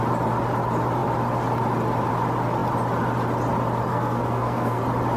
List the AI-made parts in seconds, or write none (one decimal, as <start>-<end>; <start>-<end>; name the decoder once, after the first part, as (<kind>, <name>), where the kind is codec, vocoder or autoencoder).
3.9-4.8 (codec, SNAC)